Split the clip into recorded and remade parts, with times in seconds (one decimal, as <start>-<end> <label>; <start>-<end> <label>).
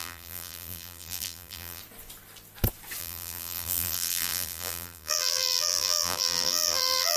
0.0-1.8 remade; 1.8-3.0 recorded; 3.0-7.2 remade